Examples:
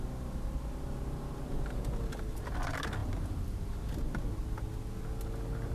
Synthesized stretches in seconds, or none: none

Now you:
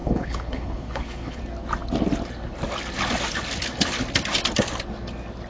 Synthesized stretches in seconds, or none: 0.0-1.4 (codec, HILCodec)

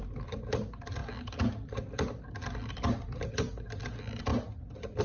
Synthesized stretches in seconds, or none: none